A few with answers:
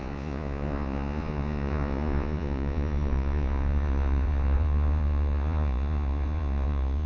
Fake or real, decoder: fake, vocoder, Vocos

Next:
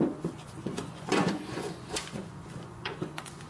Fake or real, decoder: fake, vocoder, Vocos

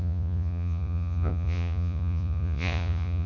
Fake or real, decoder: fake, vocoder, Vocos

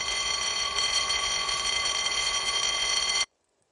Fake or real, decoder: fake, vocoder, Vocos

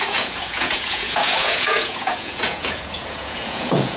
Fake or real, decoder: fake, vocoder, Vocos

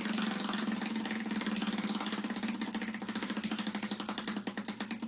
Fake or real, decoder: real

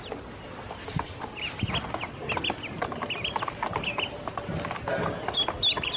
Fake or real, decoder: real